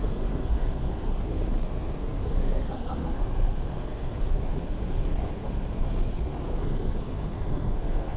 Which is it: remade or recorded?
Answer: remade